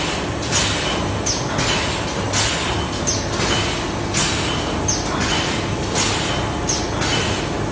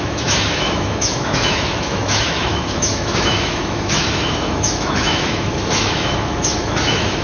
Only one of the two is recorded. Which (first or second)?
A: first